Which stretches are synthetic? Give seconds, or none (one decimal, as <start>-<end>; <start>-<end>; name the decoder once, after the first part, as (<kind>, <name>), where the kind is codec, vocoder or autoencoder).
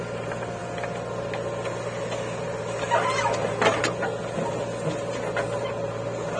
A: none